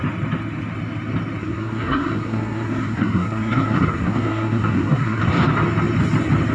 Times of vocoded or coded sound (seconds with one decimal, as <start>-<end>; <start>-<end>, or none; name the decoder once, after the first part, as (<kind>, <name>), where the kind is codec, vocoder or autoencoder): 1.4-5.3 (codec, SNAC)